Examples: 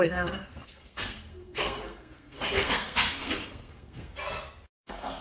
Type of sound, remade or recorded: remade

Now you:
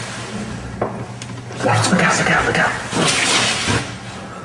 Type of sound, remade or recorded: recorded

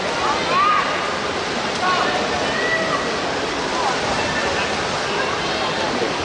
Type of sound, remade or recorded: recorded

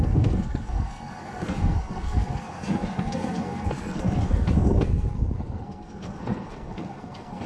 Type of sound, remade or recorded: remade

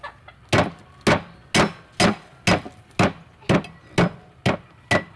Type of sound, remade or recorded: recorded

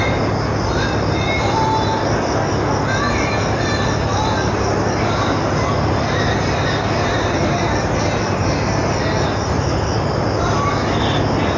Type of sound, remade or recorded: recorded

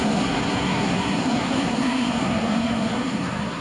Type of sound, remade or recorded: remade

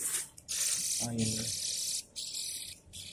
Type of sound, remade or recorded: recorded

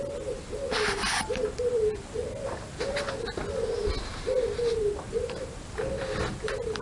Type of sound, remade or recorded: recorded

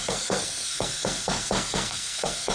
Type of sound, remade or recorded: remade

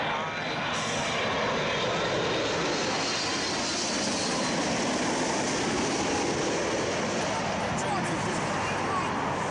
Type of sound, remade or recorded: recorded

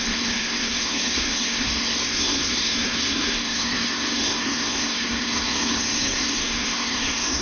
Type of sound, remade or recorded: remade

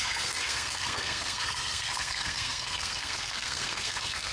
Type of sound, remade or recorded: remade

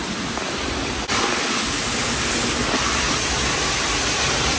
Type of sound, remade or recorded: recorded